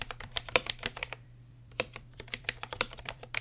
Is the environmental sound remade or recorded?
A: remade